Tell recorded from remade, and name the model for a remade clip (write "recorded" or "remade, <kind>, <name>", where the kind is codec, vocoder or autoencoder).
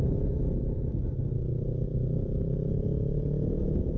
recorded